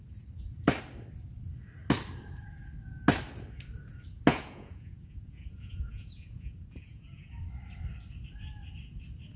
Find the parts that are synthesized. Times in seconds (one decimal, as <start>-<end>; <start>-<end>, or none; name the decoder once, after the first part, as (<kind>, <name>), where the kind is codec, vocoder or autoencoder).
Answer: 4.3-7.4 (vocoder, Vocos)